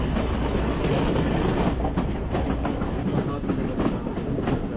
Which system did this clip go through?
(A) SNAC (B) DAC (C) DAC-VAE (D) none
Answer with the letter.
D